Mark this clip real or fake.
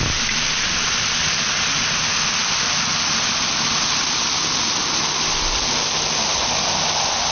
real